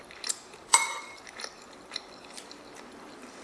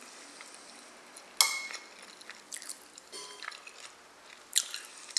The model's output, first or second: first